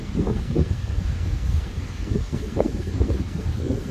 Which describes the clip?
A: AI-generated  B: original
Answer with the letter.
A